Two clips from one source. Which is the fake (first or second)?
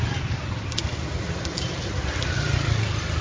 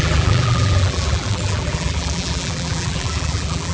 second